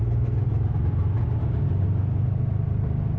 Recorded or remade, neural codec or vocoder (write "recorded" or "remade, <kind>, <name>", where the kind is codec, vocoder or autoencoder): recorded